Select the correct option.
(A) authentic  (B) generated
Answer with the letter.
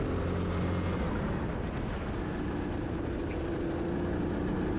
A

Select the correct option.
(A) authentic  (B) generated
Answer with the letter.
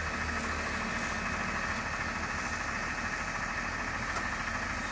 A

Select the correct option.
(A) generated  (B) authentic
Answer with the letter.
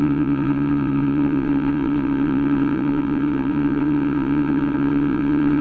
A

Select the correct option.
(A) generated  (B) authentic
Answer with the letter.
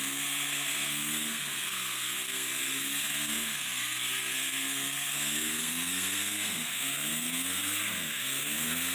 A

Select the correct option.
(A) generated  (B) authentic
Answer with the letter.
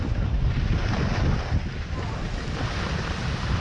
B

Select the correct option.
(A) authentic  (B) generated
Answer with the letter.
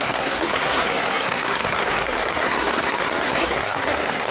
B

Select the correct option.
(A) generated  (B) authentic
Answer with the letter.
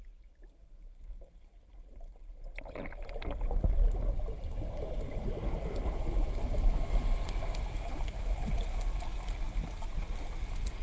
B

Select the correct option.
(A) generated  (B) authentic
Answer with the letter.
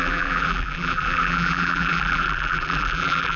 A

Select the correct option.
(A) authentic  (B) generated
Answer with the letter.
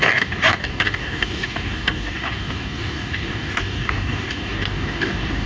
B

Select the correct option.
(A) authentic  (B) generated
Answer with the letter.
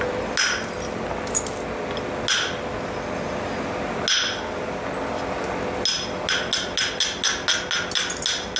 A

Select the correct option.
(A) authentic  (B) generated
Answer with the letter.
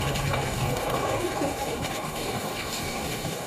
B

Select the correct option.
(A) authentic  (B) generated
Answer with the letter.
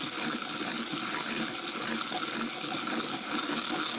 A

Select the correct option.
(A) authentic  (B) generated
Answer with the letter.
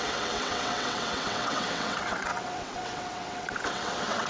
B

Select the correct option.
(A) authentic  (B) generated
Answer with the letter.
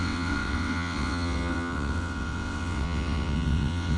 B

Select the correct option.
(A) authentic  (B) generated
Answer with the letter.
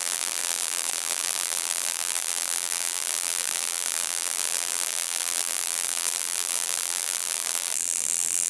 B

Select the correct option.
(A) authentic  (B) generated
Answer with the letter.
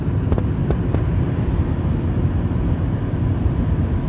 A